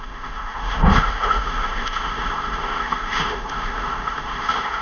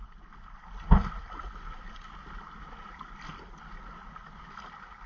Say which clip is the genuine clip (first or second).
second